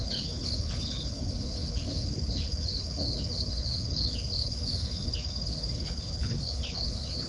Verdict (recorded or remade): remade